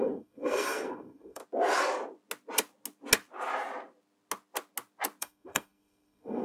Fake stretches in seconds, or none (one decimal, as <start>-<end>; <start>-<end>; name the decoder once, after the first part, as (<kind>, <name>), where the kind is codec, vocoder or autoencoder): 0.0-1.4 (codec, SNAC); 5.2-6.4

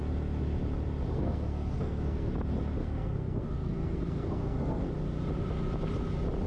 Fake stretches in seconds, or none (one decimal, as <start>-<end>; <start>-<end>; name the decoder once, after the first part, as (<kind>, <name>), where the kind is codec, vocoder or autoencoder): 1.1-2.3 (codec, SNAC); 2.8-4.9

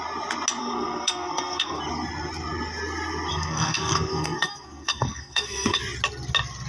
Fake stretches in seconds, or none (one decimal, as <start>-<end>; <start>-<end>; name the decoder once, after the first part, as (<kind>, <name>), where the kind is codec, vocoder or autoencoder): 0.6-1.8 (codec, SNAC); 3.3-5.8

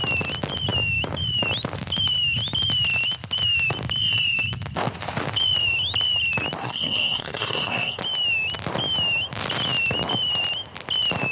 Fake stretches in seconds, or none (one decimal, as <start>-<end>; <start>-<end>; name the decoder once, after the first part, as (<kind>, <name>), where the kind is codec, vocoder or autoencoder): 6.6-8.0 (codec, SNAC)

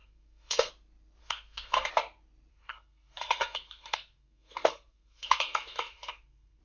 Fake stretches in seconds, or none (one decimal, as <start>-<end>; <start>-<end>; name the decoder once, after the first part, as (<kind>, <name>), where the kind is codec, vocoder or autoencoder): 0.0-0.7 (codec, SNAC); 1.2-1.9; 2.5-6.6

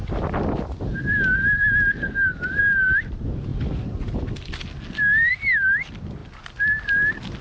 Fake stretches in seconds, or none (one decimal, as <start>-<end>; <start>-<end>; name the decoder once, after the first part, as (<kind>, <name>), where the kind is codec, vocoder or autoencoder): none

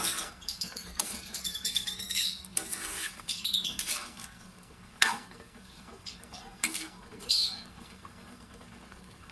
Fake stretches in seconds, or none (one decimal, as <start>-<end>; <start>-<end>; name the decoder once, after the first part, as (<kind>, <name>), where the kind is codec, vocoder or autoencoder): 0.0-9.3 (codec, SNAC)

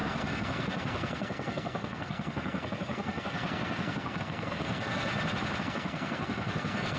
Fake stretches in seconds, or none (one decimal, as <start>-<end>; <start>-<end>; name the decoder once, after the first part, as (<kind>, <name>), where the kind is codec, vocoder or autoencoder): 0.0-5.1 (codec, SNAC); 5.6-7.0